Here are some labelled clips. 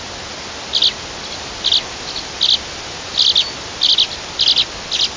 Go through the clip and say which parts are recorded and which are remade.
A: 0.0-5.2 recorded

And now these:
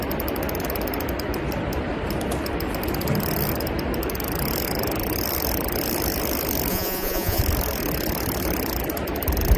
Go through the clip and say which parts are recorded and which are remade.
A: 0.0-6.7 recorded; 6.7-7.4 remade; 7.4-9.6 recorded

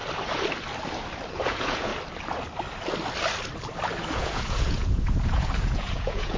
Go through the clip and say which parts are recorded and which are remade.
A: 0.0-1.3 recorded; 1.3-1.9 remade; 1.9-4.1 recorded; 4.1-6.4 remade